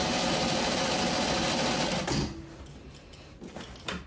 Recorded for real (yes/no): yes